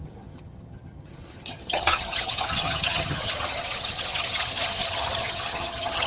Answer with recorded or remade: remade